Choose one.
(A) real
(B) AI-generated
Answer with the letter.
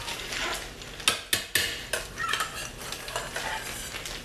A